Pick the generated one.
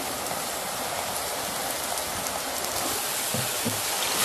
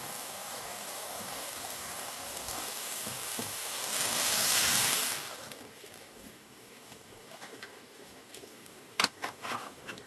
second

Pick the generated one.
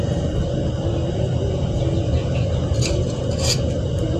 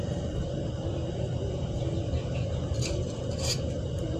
second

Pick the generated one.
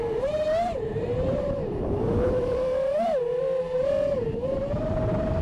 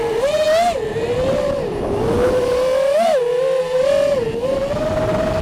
first